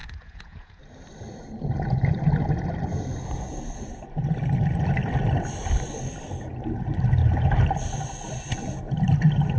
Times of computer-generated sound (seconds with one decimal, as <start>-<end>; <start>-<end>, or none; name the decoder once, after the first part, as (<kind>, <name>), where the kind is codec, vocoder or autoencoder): 0.0-0.8 (vocoder, Vocos)